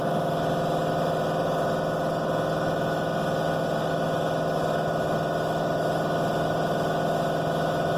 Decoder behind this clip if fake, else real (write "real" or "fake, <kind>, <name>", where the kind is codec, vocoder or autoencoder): real